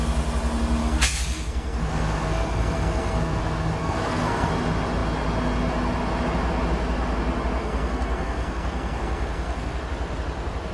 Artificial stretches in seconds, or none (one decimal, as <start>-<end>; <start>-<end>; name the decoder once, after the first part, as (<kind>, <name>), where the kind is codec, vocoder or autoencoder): 0.8-3.4 (codec, SNAC); 3.8-4.5; 7.6-9.8